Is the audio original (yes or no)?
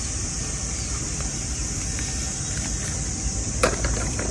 yes